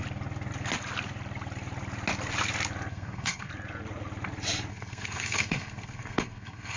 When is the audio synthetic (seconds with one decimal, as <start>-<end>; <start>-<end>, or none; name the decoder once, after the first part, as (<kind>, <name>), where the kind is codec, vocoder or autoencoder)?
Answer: 2.9-3.5 (codec, SNAC); 4.7-6.8